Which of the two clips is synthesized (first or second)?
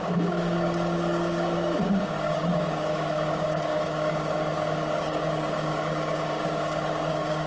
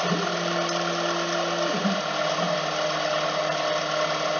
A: first